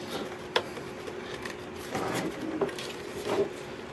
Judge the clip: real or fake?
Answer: real